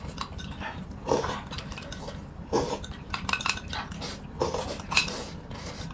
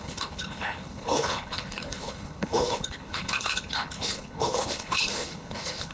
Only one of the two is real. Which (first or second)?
first